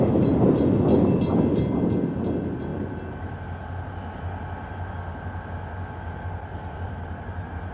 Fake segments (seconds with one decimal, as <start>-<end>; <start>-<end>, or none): 6.5-7.7